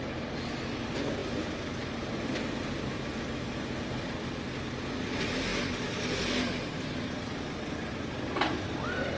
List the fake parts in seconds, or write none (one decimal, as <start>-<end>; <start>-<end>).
none